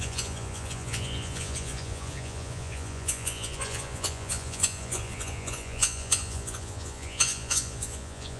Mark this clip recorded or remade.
remade